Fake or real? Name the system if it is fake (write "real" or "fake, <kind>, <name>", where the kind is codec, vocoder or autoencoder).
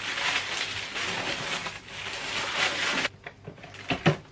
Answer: real